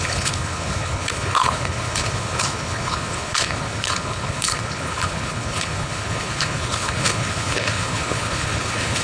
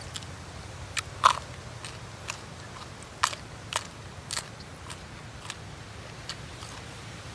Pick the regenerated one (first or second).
first